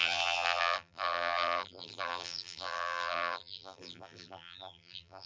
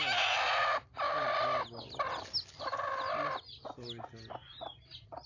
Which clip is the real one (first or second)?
second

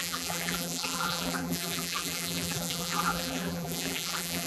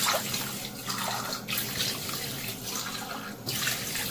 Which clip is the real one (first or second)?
second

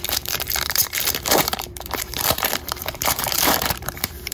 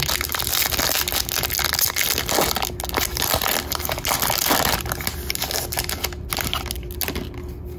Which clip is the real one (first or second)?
second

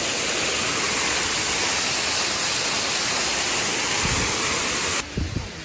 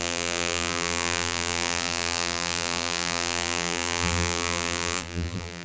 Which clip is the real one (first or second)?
first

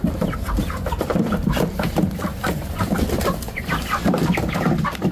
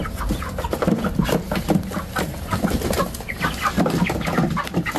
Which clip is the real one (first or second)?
second